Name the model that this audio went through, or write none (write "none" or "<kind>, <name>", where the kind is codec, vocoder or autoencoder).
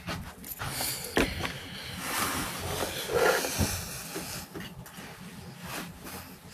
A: none